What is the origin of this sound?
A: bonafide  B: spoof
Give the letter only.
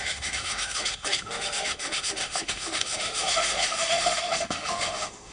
B